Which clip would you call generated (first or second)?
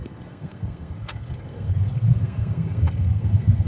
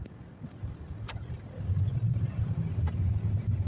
first